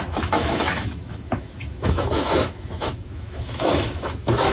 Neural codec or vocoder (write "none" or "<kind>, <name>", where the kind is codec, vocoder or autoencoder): autoencoder, DAC-VAE